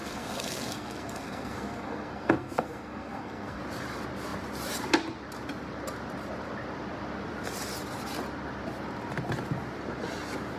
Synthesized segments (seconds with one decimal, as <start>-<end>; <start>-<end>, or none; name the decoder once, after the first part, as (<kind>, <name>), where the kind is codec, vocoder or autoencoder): 0.0-3.6 (codec, SNAC)

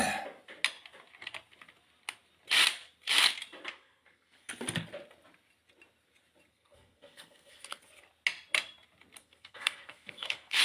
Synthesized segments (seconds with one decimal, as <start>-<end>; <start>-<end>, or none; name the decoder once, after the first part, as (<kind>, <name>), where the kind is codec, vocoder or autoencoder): 3.7-4.5 (codec, SNAC); 6.5-7.8; 9.2-10.6

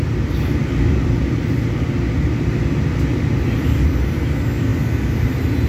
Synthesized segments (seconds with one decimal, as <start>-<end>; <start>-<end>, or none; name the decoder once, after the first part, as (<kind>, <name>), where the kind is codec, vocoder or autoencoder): none